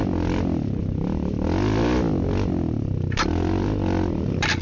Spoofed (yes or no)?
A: no